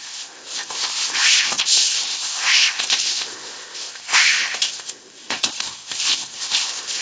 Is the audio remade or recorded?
remade